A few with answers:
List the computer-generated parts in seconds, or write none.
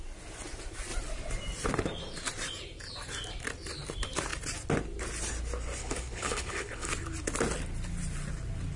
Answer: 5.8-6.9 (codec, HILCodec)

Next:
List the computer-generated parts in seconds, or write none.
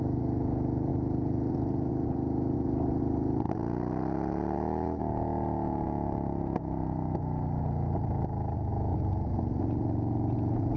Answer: none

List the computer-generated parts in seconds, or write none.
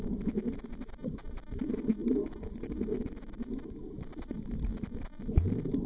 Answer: none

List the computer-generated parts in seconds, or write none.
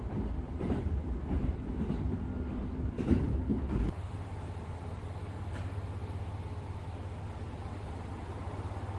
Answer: 3.3-4.1 (codec, HILCodec)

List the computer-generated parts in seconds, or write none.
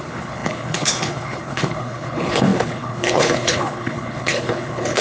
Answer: 0.0-5.0 (codec, HILCodec)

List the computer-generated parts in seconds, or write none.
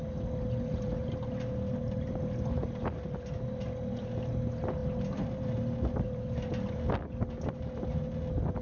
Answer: none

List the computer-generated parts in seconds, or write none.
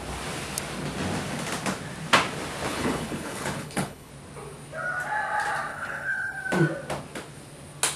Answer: 2.7-4.1 (codec, HILCodec); 5.7-6.4